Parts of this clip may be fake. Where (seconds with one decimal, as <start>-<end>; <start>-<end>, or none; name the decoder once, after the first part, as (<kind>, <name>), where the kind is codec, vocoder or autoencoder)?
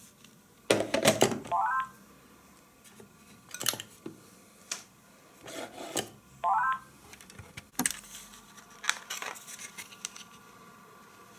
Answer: none